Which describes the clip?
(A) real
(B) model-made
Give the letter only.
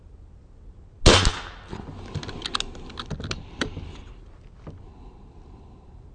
A